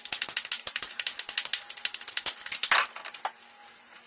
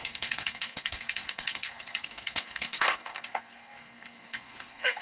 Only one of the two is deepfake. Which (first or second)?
second